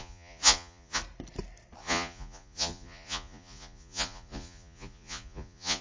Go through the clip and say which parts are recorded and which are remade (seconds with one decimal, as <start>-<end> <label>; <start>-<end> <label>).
0.0-1.0 remade; 1.0-1.8 recorded; 1.8-5.8 remade